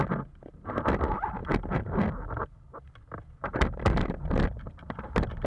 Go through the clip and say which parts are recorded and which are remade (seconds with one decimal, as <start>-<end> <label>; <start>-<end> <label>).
0.0-5.5 recorded